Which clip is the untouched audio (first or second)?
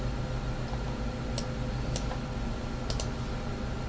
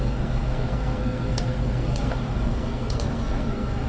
first